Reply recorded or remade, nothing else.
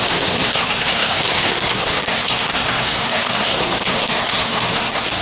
remade